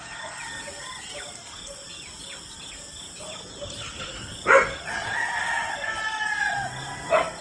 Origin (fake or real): real